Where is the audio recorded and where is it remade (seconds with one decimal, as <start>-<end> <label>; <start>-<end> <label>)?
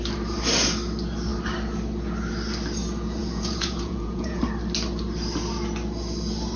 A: 0.0-3.2 recorded; 3.2-4.4 remade; 4.4-6.6 recorded